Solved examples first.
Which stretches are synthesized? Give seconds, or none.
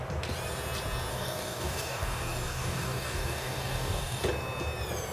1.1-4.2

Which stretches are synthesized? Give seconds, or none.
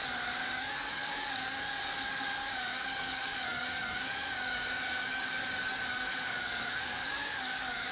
0.5-7.9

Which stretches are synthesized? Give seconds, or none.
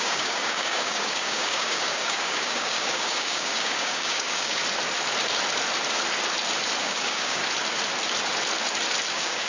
0.0-4.6; 6.8-7.4; 9.1-9.5